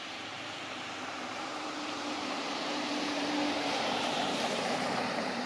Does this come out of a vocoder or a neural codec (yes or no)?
yes